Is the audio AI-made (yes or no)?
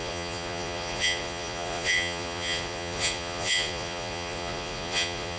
yes